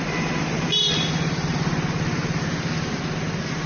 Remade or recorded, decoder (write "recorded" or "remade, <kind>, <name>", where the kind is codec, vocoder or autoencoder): recorded